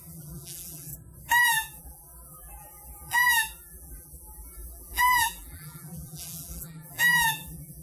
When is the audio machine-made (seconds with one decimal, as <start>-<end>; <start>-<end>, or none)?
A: 0.0-0.9; 1.4-7.8